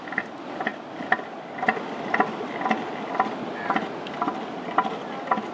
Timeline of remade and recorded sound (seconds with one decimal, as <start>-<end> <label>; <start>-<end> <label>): 0.0-5.5 recorded